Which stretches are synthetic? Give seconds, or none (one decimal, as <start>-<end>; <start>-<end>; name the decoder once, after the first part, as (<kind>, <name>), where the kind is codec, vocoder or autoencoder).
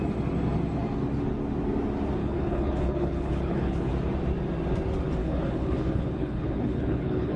2.2-3.9 (codec, HILCodec); 5.2-7.4